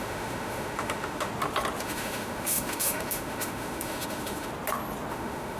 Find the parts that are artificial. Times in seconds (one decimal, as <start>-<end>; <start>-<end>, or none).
0.0-1.3; 1.8-4.5; 5.1-5.6